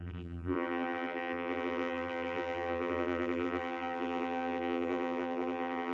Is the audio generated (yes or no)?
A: yes